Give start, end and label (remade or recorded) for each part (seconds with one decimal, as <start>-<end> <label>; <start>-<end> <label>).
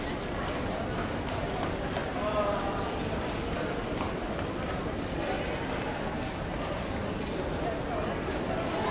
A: 0.0-8.9 recorded